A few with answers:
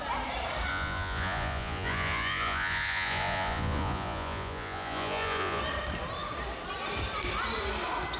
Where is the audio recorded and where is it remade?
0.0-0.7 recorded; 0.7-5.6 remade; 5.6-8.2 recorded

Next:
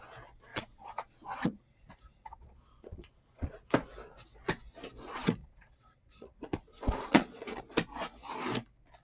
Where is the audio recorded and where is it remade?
0.0-0.5 recorded; 0.5-3.6 remade; 3.6-5.4 recorded; 5.4-7.6 remade; 7.6-9.0 recorded

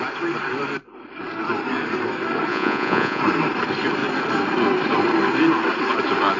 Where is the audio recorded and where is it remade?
0.0-2.5 recorded; 2.5-3.2 remade; 3.2-6.4 recorded

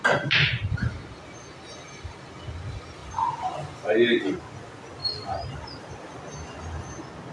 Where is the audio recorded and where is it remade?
0.0-7.3 recorded

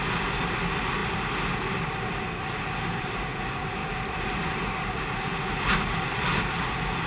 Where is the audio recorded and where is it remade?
0.0-7.1 recorded

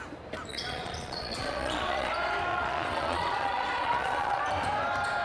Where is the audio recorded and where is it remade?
0.0-0.5 recorded; 0.5-2.1 remade; 2.1-2.5 recorded; 2.5-4.4 remade; 4.4-5.2 recorded